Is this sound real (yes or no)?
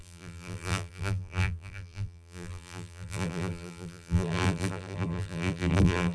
no